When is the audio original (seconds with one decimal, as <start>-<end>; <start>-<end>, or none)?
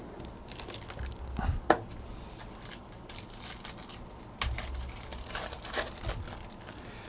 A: 0.0-5.1; 5.9-7.1